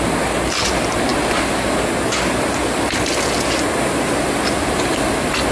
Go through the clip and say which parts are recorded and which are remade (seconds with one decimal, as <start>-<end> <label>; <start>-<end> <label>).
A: 0.0-5.5 recorded